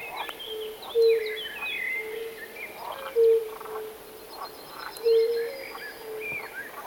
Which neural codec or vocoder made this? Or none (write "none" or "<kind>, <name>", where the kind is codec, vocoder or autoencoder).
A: none